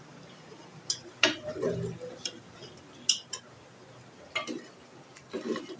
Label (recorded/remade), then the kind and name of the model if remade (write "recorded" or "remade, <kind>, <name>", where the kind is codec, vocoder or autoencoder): recorded